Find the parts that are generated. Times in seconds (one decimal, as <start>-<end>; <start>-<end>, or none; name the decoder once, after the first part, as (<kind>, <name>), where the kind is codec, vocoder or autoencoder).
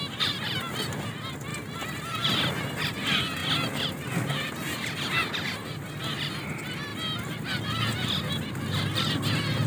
none